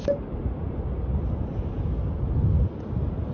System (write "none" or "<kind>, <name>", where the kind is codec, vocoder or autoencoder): none